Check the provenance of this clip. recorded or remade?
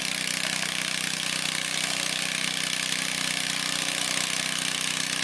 recorded